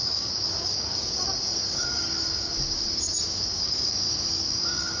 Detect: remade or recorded remade